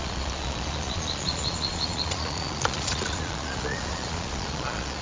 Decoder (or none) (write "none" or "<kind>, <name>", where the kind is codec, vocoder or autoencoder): vocoder, Vocos